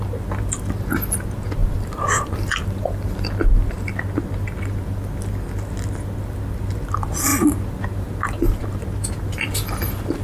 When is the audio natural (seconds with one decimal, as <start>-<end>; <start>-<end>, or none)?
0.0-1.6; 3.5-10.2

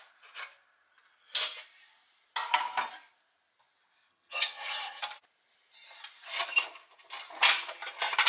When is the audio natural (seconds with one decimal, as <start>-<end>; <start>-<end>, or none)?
0.0-4.1; 5.0-8.3

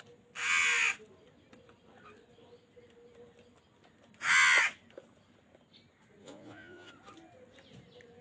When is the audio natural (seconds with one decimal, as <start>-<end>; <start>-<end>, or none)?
0.0-6.2; 6.9-8.2

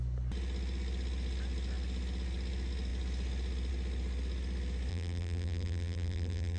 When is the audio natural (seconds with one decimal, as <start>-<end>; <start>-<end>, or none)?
0.0-4.9

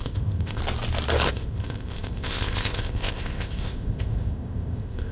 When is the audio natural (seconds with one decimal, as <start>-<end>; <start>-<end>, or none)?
0.6-1.3

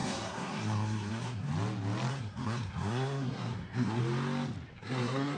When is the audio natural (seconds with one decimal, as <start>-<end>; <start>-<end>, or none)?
1.5-2.1; 4.0-4.7

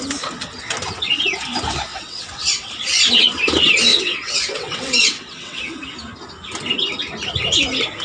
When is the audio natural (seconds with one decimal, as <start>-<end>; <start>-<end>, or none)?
0.0-1.9; 2.7-3.9; 5.7-8.0

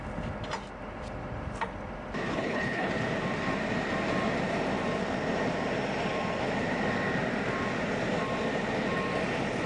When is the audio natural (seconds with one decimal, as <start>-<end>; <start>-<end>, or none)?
0.0-2.3; 2.9-9.7